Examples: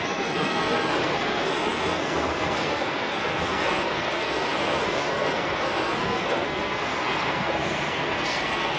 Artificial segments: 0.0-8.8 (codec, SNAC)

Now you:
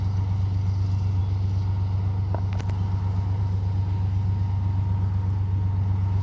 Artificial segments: none

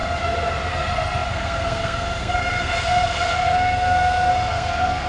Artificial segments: 0.7-5.1 (codec, SNAC)